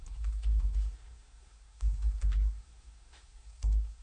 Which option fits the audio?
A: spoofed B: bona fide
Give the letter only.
A